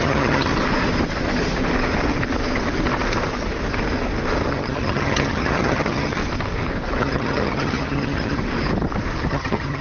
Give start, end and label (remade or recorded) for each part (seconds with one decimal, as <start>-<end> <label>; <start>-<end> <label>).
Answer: 0.0-0.5 remade; 0.5-4.5 recorded; 4.5-6.2 remade; 6.2-7.0 recorded; 7.0-8.4 remade; 8.4-9.3 recorded; 9.3-9.8 remade